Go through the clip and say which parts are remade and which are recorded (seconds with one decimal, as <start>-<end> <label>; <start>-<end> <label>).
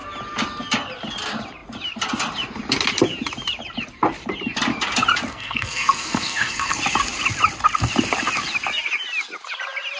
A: 0.0-5.3 recorded; 5.3-6.8 remade; 6.8-10.0 recorded